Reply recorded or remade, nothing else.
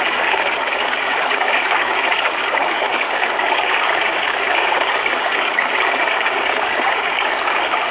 remade